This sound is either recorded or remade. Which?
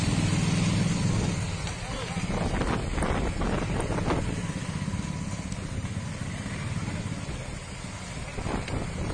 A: recorded